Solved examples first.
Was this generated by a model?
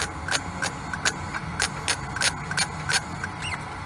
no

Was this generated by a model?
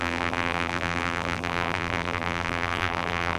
yes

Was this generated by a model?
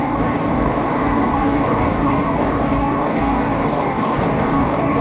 yes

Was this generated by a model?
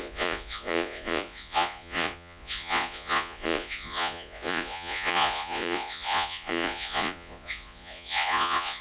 yes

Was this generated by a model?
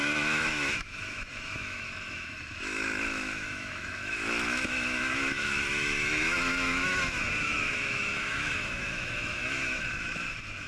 yes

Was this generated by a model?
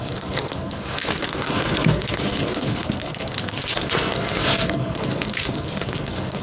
yes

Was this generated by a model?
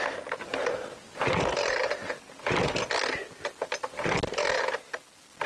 no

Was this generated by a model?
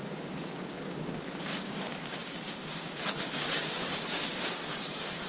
yes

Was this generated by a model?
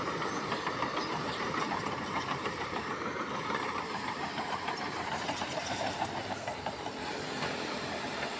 yes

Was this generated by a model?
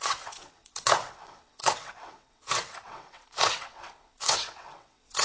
yes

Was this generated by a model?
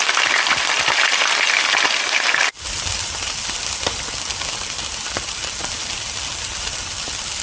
no